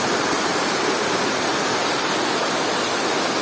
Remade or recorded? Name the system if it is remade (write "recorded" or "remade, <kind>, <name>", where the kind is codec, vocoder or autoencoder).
recorded